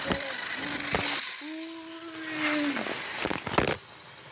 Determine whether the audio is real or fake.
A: real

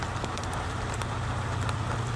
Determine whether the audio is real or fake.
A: real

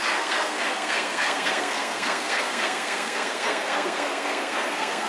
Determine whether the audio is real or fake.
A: fake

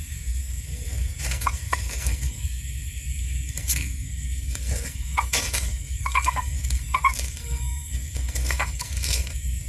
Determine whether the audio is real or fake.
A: fake